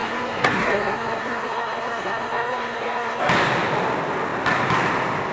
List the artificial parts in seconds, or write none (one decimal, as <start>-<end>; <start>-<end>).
0.0-3.2

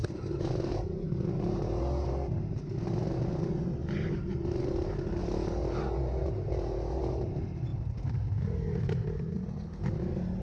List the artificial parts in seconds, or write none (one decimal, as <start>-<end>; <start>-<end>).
none